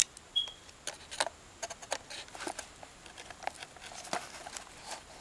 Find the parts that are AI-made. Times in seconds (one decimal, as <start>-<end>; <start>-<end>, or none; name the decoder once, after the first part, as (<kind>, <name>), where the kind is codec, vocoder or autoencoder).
0.0-1.0 (vocoder, BigVGAN v2)

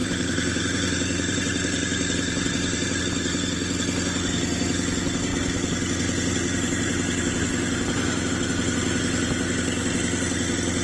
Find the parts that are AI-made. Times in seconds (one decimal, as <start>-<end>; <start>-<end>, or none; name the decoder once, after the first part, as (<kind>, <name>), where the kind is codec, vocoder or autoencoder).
0.0-3.0 (vocoder, BigVGAN v2)

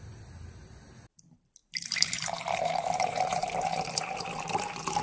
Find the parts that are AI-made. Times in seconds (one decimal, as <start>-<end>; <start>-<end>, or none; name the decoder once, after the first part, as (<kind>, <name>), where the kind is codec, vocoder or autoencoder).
1.6-4.6 (vocoder, BigVGAN v2)

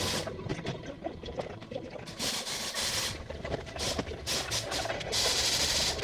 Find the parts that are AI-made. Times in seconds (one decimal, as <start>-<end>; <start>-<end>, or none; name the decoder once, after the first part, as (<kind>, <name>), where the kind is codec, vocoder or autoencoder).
0.5-4.1 (vocoder, BigVGAN v2)

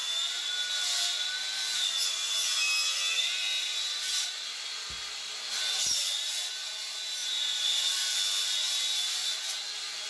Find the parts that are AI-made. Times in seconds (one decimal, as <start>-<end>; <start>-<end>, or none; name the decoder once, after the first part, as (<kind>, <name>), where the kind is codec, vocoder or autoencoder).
7.2-7.9 (vocoder, BigVGAN v2)